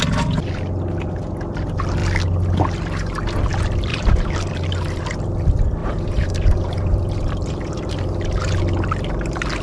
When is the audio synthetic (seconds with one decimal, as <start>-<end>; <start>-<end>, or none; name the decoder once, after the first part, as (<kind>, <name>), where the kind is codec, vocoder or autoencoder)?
3.9-5.1 (vocoder, BigVGAN v2); 5.8-7.9